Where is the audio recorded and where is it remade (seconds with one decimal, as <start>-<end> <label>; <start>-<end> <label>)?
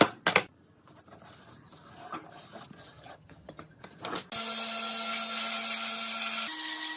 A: 0.0-2.8 recorded; 2.8-3.8 remade; 3.8-7.0 recorded